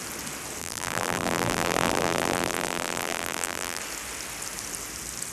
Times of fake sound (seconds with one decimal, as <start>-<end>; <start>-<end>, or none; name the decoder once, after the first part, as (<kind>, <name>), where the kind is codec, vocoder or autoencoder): 0.6-3.8 (vocoder, BigVGAN v2)